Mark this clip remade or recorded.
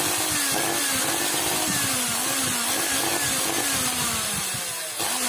recorded